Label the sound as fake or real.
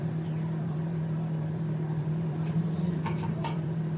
fake